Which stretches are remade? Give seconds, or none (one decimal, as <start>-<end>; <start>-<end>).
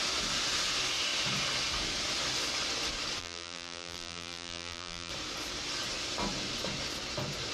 3.2-5.1